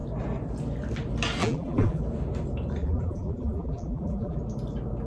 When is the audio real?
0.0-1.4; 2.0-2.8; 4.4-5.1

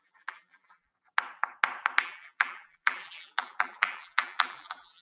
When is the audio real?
0.9-2.0